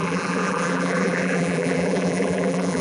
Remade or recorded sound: remade